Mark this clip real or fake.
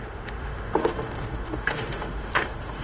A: fake